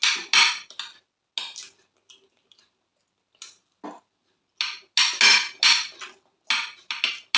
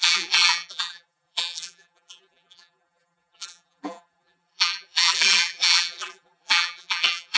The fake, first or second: second